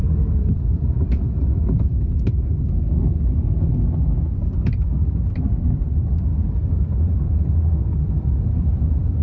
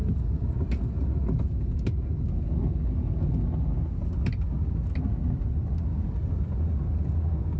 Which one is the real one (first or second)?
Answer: second